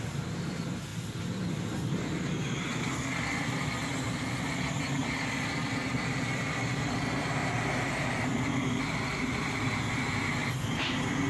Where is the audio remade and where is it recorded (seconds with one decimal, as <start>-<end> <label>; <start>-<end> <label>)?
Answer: 0.0-0.9 recorded; 0.9-1.9 remade; 1.9-5.0 recorded; 5.0-7.0 remade; 7.0-7.4 recorded; 7.4-9.8 remade; 9.8-11.3 recorded